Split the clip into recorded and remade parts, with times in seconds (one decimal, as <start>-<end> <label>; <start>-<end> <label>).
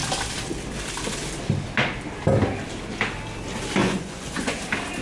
0.0-3.8 recorded; 3.8-4.6 remade; 4.6-5.0 recorded